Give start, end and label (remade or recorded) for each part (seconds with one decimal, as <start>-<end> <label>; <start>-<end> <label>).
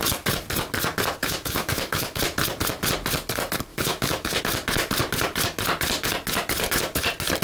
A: 0.0-1.2 recorded; 1.2-2.2 remade; 2.2-3.7 recorded; 3.7-4.4 remade; 4.4-7.4 recorded